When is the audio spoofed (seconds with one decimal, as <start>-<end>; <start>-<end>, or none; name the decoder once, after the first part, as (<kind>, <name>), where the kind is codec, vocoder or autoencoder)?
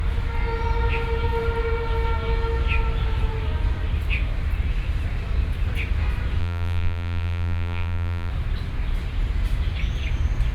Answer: 6.4-8.3 (vocoder, BigVGAN v2)